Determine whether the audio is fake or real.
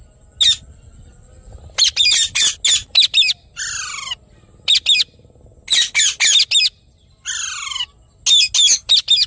real